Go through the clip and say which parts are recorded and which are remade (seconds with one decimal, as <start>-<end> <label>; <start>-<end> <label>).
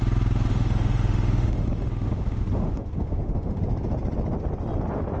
0.0-0.5 recorded; 0.5-3.6 remade; 3.6-5.2 recorded